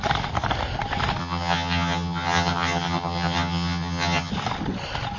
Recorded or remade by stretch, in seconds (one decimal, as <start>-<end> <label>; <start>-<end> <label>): 0.0-1.2 recorded; 1.2-4.3 remade; 4.3-5.2 recorded